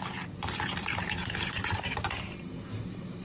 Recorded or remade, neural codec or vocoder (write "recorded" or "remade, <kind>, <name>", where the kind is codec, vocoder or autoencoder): recorded